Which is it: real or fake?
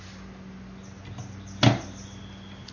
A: real